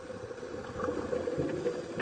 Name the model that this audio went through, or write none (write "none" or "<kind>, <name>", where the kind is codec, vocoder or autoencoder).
none